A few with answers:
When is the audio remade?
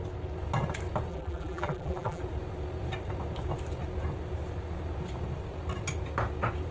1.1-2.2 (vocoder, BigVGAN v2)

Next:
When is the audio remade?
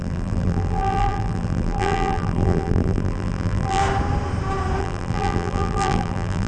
0.0-3.8 (vocoder, BigVGAN v2); 4.8-6.5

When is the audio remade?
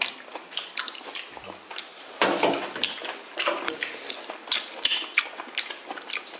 none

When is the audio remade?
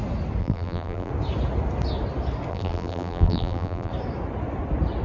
0.4-1.1 (vocoder, BigVGAN v2); 2.5-3.9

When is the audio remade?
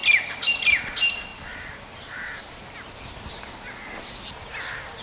1.3-3.3 (vocoder, BigVGAN v2)